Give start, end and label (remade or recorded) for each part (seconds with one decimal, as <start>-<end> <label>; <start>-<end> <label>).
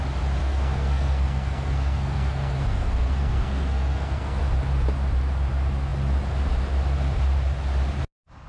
0.0-0.4 recorded; 0.4-4.4 remade; 4.4-8.5 recorded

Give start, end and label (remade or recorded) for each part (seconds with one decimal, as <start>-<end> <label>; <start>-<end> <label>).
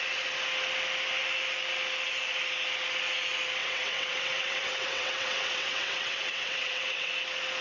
0.0-3.6 recorded; 3.6-7.1 remade; 7.1-7.6 recorded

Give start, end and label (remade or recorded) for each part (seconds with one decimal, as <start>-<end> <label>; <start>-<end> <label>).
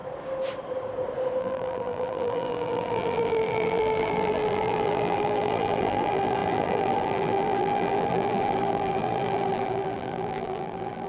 0.0-1.4 recorded; 1.4-11.1 remade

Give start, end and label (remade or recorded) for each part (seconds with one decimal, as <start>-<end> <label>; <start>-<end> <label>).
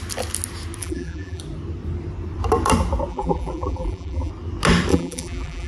0.0-0.8 recorded; 0.8-1.4 remade; 1.4-3.1 recorded; 3.1-4.3 remade; 4.3-4.9 recorded; 4.9-5.7 remade